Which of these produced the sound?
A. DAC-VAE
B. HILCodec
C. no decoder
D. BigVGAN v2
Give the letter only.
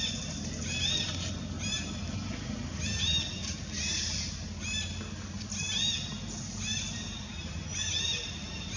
C